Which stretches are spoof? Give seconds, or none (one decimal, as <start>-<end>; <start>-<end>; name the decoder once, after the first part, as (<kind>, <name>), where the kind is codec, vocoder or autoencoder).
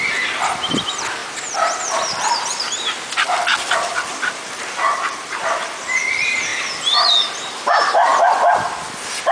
none